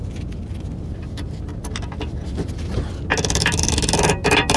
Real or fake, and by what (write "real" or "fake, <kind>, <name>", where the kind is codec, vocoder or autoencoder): real